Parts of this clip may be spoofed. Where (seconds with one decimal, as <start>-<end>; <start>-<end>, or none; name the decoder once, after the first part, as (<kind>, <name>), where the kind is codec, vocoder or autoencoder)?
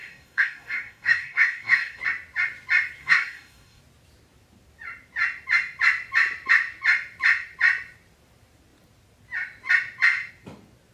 0.0-2.0 (codec, DAC); 3.0-3.8